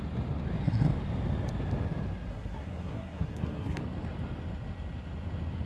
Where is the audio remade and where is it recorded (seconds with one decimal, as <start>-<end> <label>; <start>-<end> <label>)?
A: 0.0-2.3 recorded; 2.3-3.8 remade; 3.8-5.7 recorded

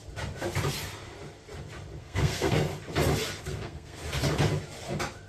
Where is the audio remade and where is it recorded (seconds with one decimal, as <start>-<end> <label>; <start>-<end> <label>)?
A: 0.0-2.0 recorded; 2.0-2.7 remade; 2.7-3.4 recorded; 3.4-4.0 remade; 4.0-5.3 recorded

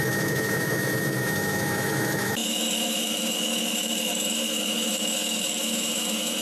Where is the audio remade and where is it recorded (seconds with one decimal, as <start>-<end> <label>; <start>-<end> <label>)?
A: 0.0-6.4 remade

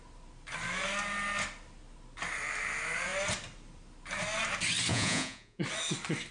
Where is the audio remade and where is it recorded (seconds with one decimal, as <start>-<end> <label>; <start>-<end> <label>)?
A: 0.0-4.9 recorded; 4.9-5.6 remade; 5.6-6.3 recorded